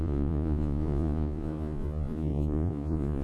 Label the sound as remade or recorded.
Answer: remade